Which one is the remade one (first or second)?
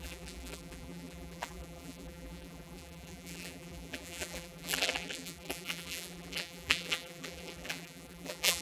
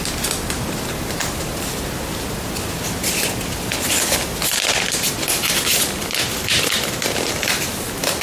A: first